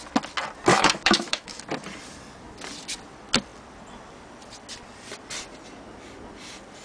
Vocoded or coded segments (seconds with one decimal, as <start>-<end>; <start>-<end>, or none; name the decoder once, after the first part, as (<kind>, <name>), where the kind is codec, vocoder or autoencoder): 0.7-1.6 (autoencoder, DAC-VAE)